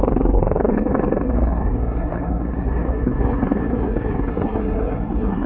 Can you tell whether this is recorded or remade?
remade